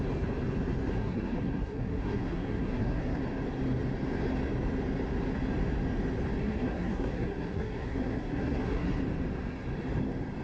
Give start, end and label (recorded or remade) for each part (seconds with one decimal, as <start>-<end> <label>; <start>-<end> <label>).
0.0-0.9 recorded; 0.9-3.2 remade; 3.2-6.4 recorded; 6.4-9.0 remade; 9.0-10.4 recorded